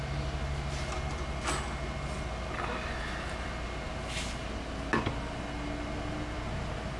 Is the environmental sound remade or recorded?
recorded